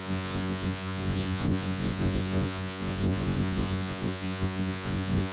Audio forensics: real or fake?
fake